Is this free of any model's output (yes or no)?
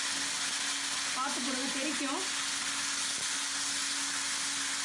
yes